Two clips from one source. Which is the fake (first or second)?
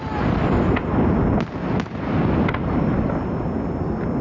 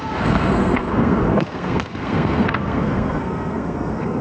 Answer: second